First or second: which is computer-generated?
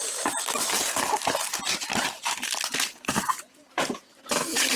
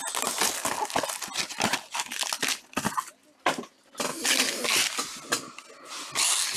first